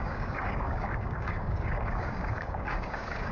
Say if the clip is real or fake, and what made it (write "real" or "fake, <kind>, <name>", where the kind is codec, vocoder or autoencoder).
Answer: fake, codec, DAC